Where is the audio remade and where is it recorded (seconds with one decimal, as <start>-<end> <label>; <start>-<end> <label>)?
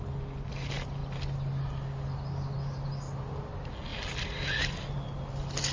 0.0-5.7 recorded